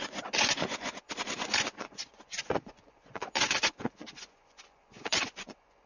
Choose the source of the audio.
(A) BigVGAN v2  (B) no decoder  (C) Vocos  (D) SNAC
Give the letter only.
C